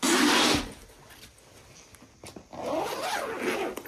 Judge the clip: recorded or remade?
recorded